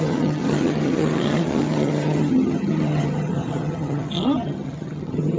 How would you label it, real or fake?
fake